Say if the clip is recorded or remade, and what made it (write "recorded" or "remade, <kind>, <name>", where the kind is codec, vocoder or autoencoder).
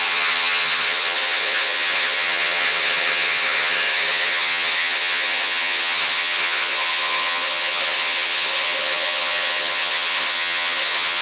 remade, vocoder, HiFi-GAN